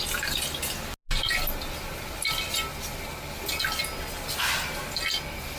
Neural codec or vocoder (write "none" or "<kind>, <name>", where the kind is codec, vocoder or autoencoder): none